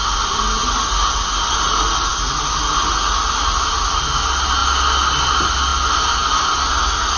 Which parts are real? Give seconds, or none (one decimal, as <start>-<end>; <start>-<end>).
0.0-7.2